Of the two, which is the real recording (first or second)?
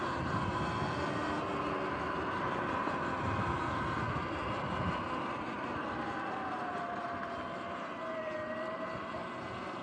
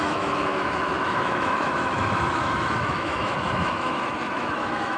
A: first